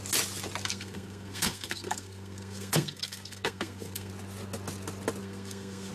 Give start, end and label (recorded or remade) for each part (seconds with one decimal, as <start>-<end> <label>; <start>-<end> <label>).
0.0-0.6 recorded; 0.6-4.1 remade; 4.1-5.2 recorded; 5.2-5.9 remade